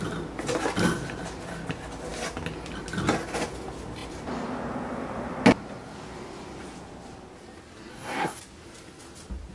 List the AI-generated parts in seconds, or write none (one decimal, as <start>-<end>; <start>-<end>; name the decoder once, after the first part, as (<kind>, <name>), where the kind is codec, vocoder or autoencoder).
7.9-8.4 (codec, SNAC)